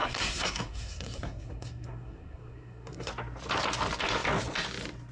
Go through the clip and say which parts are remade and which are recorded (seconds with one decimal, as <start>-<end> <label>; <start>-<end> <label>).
0.0-3.1 remade; 3.1-5.1 recorded